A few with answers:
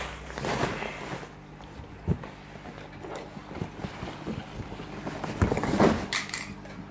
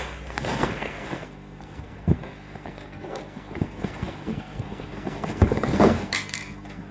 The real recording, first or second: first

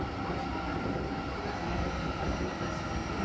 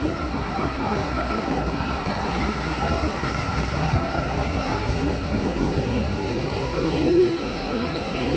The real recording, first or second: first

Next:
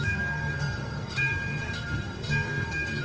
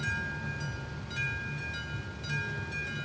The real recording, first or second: second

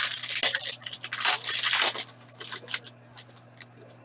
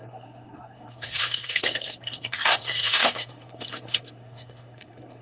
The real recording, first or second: first